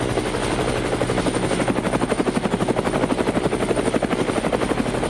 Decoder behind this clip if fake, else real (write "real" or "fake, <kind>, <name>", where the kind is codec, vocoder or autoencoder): real